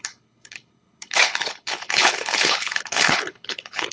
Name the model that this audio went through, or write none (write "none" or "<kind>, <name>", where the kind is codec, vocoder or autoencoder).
codec, HILCodec